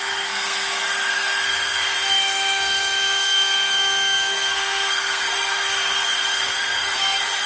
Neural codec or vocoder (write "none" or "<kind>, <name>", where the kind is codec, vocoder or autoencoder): codec, SNAC